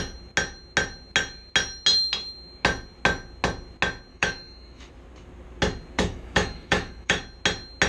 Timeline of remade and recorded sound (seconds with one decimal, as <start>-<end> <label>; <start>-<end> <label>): 0.0-4.1 recorded; 4.1-4.9 remade; 4.9-6.0 recorded; 6.0-7.2 remade; 7.2-7.9 recorded